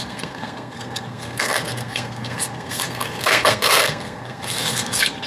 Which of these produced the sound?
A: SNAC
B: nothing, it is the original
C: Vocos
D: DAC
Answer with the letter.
A